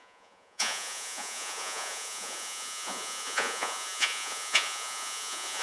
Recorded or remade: remade